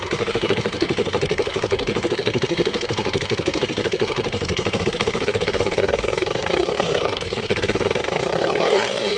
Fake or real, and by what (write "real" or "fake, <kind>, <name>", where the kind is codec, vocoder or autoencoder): fake, codec, SNAC